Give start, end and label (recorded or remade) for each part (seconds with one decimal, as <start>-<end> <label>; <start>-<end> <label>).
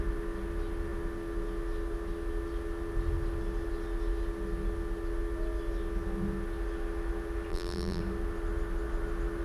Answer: 0.0-7.5 recorded; 7.5-8.0 remade; 8.0-9.4 recorded